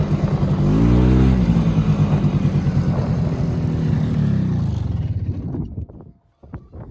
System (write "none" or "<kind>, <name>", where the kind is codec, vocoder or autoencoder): none